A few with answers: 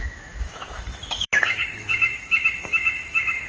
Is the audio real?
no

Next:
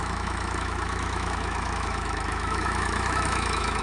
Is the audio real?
no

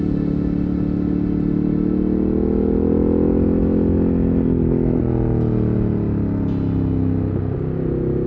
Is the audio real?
yes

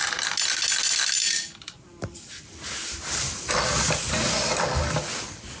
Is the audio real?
yes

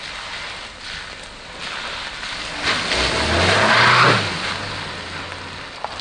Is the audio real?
yes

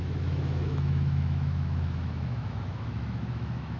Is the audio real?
no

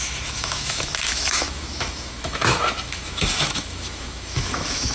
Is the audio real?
no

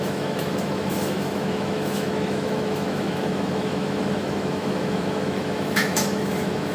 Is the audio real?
no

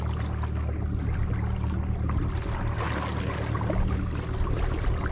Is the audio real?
yes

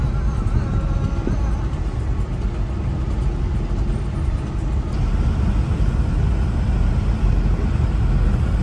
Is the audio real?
yes